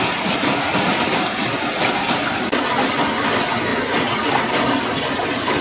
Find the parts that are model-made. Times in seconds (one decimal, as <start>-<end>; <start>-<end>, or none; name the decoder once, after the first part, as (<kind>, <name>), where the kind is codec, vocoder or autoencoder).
0.9-1.4 (vocoder, BigVGAN v2)